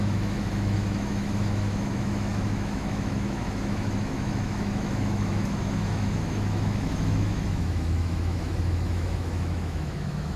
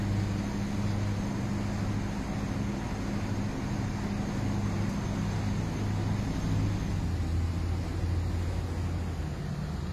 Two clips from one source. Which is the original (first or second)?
second